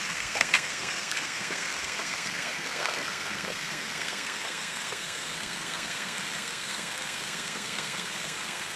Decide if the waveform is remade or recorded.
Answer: remade